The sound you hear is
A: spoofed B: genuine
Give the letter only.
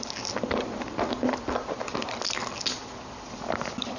B